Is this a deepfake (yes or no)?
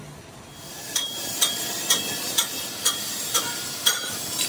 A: yes